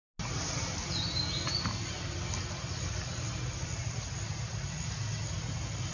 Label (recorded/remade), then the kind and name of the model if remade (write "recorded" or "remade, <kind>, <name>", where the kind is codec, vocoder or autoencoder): recorded